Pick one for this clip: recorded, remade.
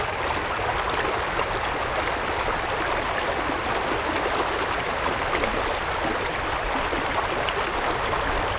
recorded